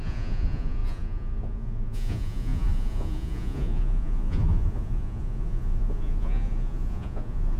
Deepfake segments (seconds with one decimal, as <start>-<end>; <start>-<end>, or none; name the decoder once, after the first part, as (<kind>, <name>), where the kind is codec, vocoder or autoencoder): 0.0-7.6 (vocoder, Vocos)